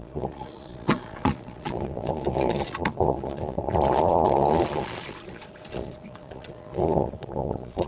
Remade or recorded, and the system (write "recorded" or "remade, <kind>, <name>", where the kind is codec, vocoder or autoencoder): remade, vocoder, Vocos